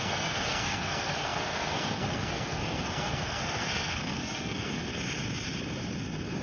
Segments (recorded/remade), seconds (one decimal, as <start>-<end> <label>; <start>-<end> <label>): 0.0-4.9 remade; 4.9-6.4 recorded